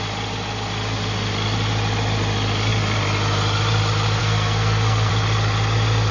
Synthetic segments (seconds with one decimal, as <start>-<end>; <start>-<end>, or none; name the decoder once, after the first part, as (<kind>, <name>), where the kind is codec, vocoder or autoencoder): 4.2-5.1 (codec, SNAC)

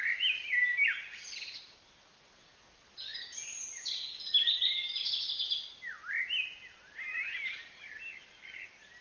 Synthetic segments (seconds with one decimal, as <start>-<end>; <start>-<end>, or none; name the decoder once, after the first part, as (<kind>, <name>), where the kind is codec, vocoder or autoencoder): 0.0-0.5 (vocoder, BigVGAN v2); 3.1-6.2

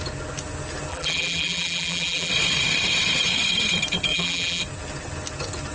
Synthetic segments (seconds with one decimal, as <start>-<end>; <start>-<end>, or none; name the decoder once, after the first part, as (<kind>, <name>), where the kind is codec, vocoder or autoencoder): 0.9-2.3 (vocoder, BigVGAN v2); 4.1-4.6

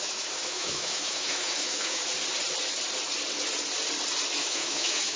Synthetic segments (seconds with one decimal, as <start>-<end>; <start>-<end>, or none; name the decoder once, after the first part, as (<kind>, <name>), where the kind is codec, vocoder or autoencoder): 0.0-2.0 (autoencoder, DAC-VAE); 4.4-5.2

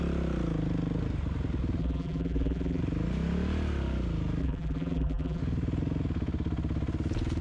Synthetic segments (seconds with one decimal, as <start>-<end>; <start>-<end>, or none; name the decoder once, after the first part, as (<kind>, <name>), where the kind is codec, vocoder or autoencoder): 1.8-2.8 (vocoder, BigVGAN v2); 4.4-5.4

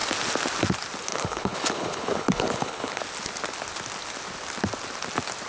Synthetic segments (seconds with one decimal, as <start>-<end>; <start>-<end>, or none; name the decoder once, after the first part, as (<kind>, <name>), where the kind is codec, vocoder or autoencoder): 1.1-3.0 (codec, HILCodec)

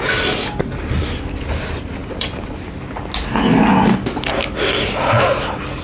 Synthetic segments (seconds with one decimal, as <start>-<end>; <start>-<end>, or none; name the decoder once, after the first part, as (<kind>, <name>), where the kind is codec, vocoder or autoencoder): none

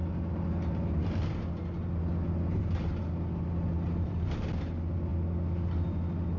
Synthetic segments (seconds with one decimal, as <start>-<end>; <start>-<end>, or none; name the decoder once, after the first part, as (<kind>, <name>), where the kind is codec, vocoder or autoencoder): none